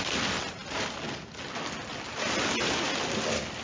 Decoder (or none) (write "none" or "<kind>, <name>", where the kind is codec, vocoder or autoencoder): none